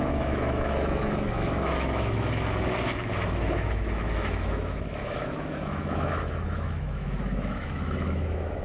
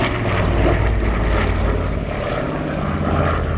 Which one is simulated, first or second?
first